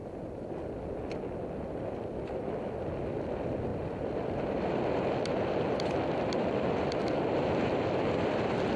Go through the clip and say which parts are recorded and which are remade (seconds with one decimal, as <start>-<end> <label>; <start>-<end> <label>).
0.0-8.8 recorded